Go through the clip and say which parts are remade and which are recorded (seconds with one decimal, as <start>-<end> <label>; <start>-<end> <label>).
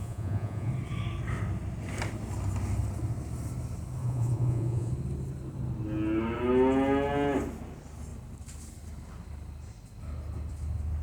0.0-0.7 remade; 0.7-4.0 recorded; 4.0-4.9 remade; 4.9-11.0 recorded